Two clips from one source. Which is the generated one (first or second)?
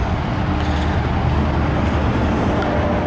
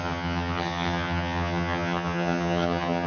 second